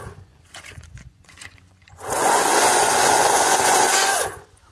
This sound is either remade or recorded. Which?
remade